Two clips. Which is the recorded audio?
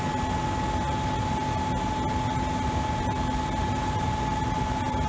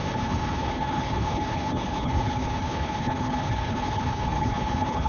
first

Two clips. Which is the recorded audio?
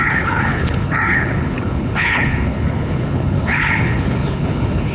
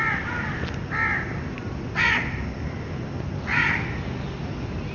second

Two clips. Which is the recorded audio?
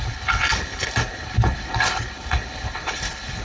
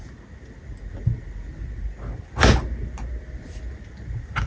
second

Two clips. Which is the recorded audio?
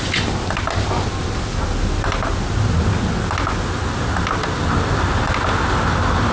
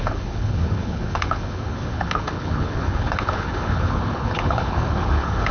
first